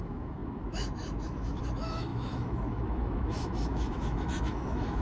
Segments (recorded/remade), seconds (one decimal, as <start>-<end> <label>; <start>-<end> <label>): 0.0-5.0 remade